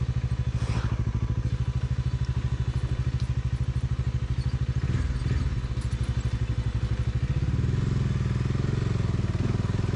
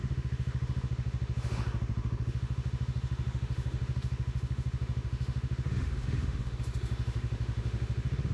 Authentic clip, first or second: first